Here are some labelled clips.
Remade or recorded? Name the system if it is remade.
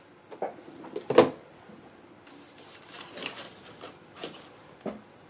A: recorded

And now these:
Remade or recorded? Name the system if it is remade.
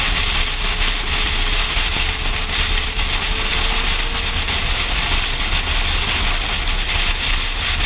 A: recorded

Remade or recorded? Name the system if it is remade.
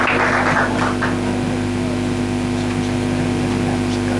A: recorded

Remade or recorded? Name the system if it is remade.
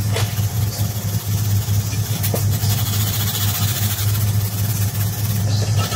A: recorded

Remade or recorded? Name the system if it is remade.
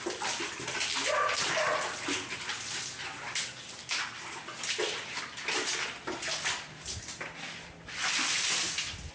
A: recorded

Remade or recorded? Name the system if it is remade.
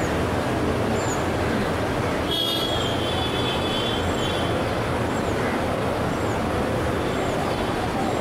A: recorded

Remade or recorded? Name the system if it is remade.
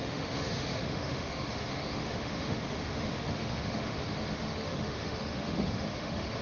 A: remade, autoencoder, DAC-VAE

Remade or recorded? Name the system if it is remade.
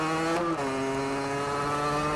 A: recorded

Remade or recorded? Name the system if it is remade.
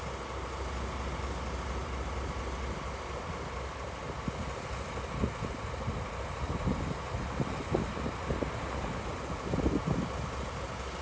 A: recorded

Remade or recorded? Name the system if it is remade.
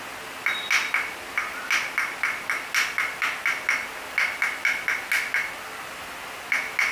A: recorded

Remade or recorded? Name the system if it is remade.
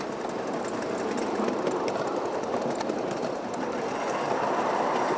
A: recorded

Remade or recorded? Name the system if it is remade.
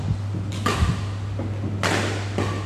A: recorded